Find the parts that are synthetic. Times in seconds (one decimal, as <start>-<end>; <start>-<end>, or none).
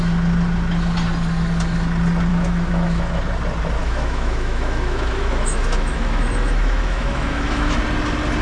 2.3-3.2; 3.8-7.8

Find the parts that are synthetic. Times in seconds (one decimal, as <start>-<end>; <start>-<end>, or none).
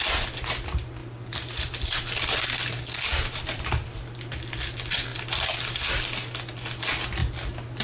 1.0-2.0; 3.1-4.3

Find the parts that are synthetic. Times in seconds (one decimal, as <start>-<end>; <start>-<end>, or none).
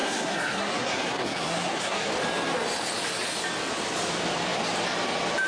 0.0-2.1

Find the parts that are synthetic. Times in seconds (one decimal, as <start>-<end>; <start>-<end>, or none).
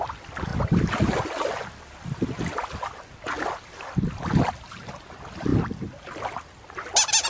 none